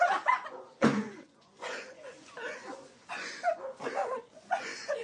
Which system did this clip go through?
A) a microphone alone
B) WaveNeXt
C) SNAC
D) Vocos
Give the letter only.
D